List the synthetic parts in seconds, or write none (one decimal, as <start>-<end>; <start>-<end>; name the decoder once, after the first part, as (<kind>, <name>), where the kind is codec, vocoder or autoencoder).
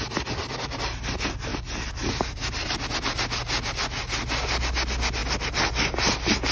none